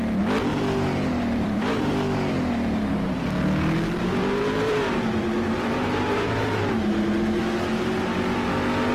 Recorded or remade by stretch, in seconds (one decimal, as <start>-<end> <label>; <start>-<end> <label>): 0.0-0.5 recorded; 0.5-3.2 remade; 3.2-4.0 recorded; 4.0-7.5 remade; 7.5-8.9 recorded